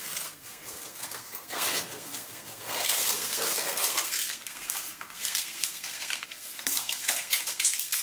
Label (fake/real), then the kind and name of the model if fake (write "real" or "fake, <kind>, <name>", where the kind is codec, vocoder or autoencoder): fake, codec, SNAC